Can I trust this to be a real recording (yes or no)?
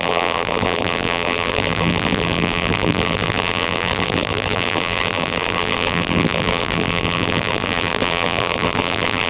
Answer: no